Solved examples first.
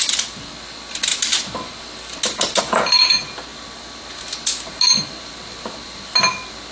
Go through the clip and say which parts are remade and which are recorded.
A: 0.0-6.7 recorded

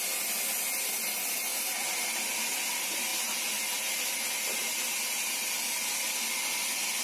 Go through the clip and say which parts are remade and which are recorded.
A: 0.0-7.0 recorded

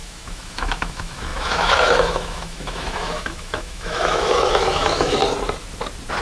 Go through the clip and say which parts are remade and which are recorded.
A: 0.0-5.2 remade; 5.2-6.2 recorded

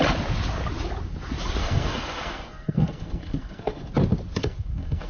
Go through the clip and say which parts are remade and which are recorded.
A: 0.0-1.6 recorded; 1.6-3.9 remade; 3.9-4.4 recorded; 4.4-5.1 remade

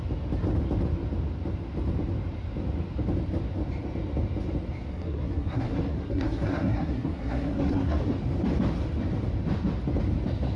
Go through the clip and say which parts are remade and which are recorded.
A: 0.0-4.9 recorded; 4.9-8.0 remade; 8.0-10.6 recorded

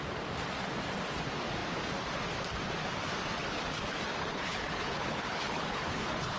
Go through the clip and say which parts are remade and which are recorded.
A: 0.0-4.3 recorded; 4.3-6.4 remade